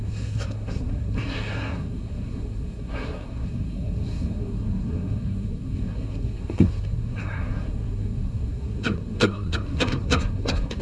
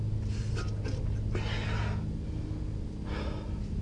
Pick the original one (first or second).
second